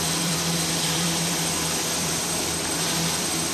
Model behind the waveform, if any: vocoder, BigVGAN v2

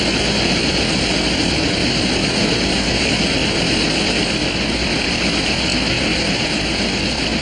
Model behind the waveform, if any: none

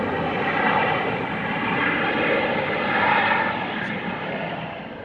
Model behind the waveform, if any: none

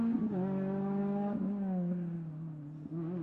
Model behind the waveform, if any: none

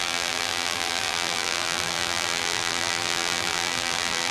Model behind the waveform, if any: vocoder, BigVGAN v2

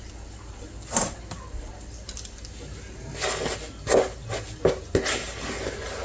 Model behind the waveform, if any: none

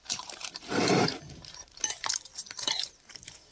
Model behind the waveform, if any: vocoder, BigVGAN v2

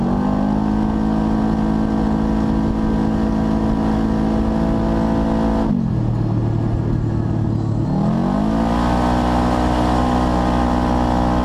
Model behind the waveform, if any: none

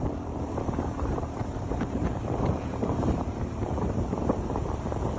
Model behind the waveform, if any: vocoder, BigVGAN v2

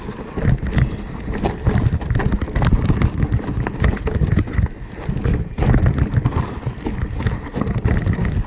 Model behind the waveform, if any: none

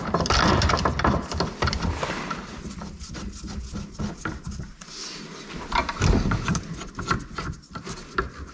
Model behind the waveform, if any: none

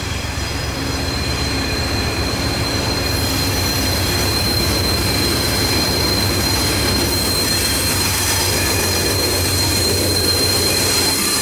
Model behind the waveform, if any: vocoder, BigVGAN v2